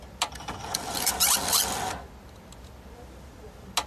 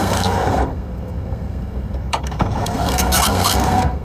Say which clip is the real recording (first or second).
first